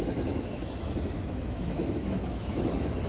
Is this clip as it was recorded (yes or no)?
no